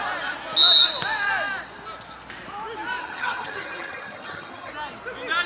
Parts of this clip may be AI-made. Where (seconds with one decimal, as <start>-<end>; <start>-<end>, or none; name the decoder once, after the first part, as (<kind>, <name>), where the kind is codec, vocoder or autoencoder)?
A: 3.0-4.7 (vocoder, HiFi-GAN)